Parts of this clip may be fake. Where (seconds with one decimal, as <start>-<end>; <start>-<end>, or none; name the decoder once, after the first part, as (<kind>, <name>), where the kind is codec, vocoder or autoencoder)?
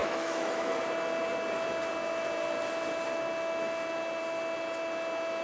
0.0-0.7 (autoencoder, DAC-VAE)